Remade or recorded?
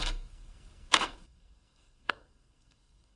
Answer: remade